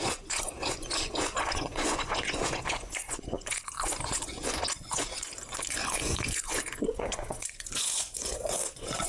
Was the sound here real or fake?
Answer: fake